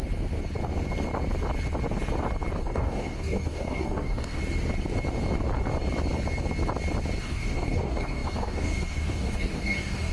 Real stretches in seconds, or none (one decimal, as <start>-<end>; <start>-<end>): 0.0-2.6; 4.4-7.2